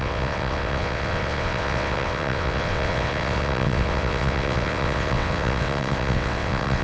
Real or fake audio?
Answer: fake